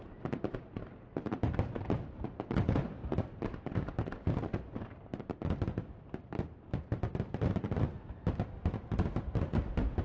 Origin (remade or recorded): remade